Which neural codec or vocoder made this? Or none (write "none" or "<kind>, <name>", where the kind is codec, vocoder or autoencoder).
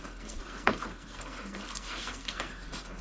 codec, SNAC